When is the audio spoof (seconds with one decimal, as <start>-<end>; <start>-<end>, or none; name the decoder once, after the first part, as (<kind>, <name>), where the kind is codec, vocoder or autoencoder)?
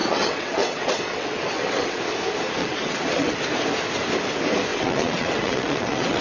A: 0.0-2.0 (vocoder, WaveNeXt); 2.6-3.4; 4.7-6.2